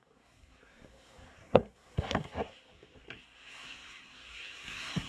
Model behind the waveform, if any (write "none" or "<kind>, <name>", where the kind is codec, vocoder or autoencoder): codec, SNAC